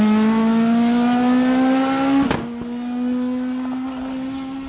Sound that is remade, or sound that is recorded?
recorded